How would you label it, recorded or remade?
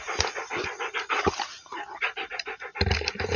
recorded